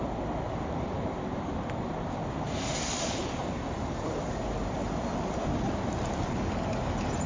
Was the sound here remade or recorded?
remade